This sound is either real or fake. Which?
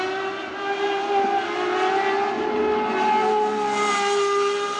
real